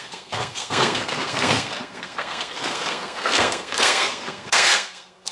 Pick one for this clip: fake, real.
fake